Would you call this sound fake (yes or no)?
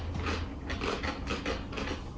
no